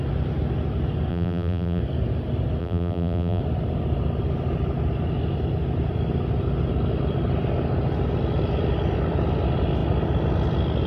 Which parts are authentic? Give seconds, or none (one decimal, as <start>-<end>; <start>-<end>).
0.0-1.1; 1.8-2.6; 3.4-10.9